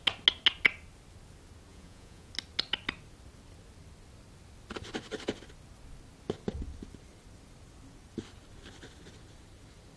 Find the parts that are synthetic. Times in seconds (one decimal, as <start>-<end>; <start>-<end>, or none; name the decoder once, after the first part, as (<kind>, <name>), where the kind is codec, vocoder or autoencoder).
1.7-2.3 (vocoder, Vocos)

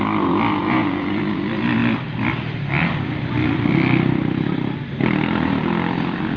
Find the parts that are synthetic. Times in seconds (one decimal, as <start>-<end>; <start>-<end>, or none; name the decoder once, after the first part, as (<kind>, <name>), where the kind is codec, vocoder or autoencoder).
0.6-1.2 (vocoder, Vocos)

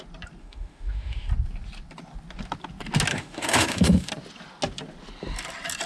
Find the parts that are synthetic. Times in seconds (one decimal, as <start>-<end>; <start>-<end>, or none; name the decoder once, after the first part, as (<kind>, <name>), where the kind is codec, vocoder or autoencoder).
0.4-1.3 (autoencoder, DAC-VAE); 3.1-4.1

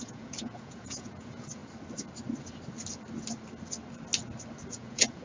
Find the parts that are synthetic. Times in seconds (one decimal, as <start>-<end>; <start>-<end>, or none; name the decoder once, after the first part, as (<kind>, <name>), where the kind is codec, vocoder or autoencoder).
0.0-1.6 (vocoder, Vocos); 4.7-5.2

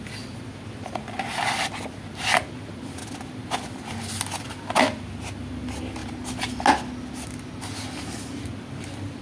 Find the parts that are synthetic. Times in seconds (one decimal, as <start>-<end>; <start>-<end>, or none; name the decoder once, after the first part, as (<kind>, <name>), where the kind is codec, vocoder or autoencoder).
none